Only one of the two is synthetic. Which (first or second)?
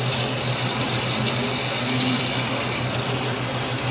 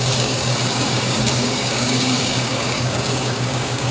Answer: second